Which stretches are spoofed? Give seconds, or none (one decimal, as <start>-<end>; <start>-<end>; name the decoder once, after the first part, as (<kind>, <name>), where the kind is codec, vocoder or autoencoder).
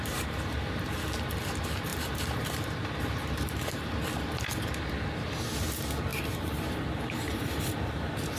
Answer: 0.0-0.8 (vocoder, BigVGAN v2); 1.9-3.9; 6.1-7.6